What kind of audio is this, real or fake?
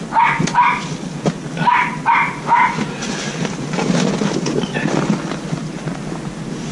real